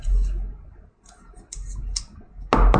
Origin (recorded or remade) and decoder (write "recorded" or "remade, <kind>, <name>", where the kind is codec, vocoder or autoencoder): recorded